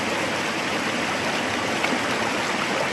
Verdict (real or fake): real